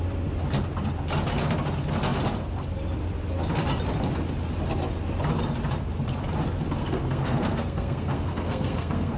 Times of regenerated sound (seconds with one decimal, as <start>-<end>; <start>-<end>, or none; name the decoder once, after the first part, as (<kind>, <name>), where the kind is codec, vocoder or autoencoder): 6.8-9.2 (codec, SNAC)

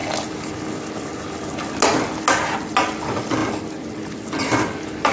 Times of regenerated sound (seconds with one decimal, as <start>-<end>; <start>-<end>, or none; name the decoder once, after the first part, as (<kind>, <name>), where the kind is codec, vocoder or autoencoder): none

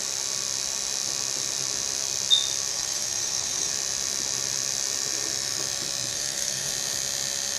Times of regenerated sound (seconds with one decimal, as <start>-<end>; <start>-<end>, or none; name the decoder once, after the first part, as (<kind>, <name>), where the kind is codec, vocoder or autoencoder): 2.7-3.7 (codec, SNAC); 6.1-6.7

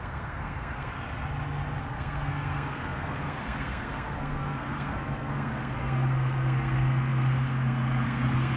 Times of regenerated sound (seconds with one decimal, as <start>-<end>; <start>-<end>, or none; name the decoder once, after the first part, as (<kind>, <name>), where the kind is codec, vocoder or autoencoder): 0.0-0.9 (codec, SNAC); 1.8-8.6

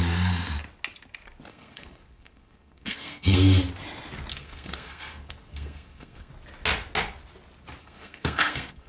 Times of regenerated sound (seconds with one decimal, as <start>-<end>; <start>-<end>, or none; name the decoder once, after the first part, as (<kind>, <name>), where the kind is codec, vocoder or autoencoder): 1.5-3.6 (codec, SNAC); 4.3-6.3; 7.8-8.9